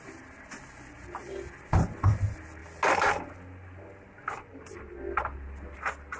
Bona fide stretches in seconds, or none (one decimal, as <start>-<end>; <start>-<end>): 0.0-6.2